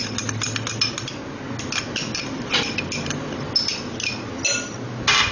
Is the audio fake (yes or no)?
no